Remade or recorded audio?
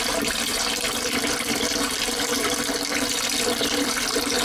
recorded